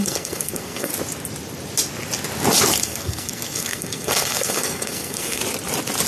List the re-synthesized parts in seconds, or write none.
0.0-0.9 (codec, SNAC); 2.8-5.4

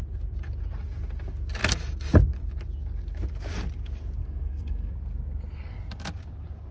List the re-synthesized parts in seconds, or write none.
4.2-4.9 (codec, SNAC)

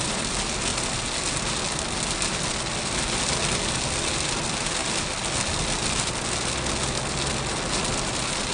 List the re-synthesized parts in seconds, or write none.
none

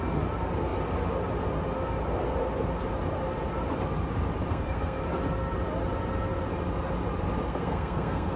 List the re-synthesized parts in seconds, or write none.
4.5-5.0 (codec, SNAC); 7.5-8.4